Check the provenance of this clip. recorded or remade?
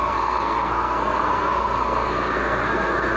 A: remade